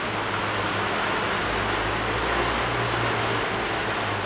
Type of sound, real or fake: real